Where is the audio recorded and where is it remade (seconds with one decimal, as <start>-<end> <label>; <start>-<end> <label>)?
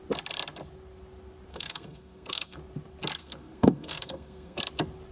0.0-1.5 recorded; 1.5-2.6 remade; 2.6-3.2 recorded; 3.2-4.6 remade; 4.6-5.1 recorded